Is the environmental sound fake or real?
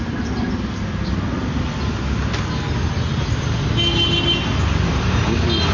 real